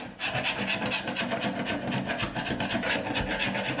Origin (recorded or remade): recorded